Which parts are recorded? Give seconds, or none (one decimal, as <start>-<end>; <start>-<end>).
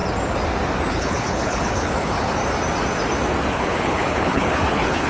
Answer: 0.0-0.9; 2.4-3.5